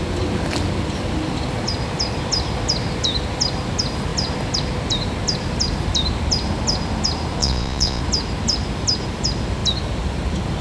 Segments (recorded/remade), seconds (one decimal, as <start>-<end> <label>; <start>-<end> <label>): 0.0-7.4 recorded; 7.4-8.0 remade; 8.0-10.6 recorded